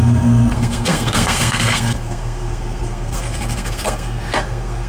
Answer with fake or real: fake